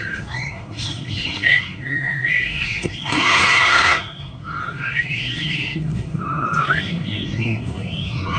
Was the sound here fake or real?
fake